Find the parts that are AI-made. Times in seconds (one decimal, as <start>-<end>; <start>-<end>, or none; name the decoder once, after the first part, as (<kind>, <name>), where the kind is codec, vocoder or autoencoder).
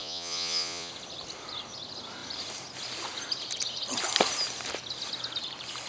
0.0-0.9 (vocoder, Vocos)